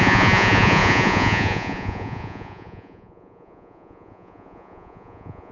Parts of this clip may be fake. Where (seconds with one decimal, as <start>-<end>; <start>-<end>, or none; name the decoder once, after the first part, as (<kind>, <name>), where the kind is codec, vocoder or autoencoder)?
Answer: 0.0-5.5 (vocoder, Vocos)